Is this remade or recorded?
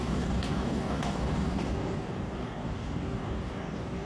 remade